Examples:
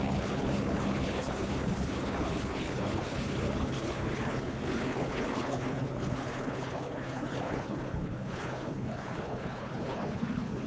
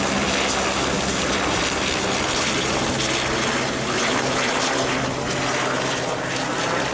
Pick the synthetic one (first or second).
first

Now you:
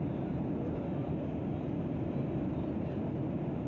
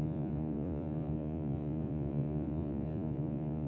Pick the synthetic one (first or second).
second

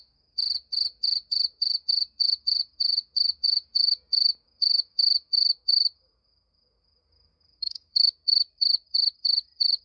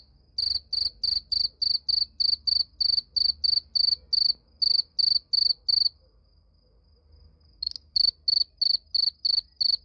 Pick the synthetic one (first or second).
first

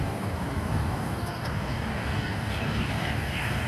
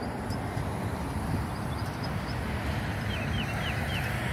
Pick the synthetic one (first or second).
first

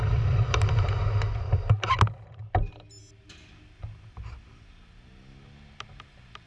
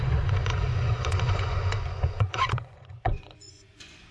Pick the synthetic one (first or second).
second